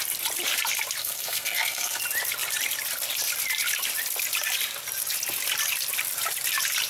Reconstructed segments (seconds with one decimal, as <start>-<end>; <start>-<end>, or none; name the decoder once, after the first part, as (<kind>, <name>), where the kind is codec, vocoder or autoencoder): 1.0-2.0 (codec, SNAC)